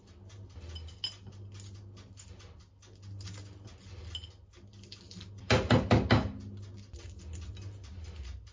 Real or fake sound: real